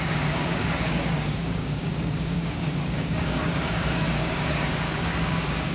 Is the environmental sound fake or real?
fake